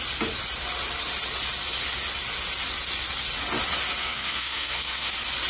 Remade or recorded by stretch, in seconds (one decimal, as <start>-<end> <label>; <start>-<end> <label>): 0.0-4.0 recorded; 4.0-5.1 remade; 5.1-5.5 recorded